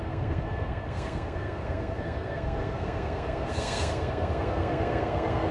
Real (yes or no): no